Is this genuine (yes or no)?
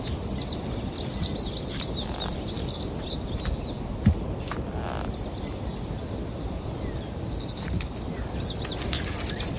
yes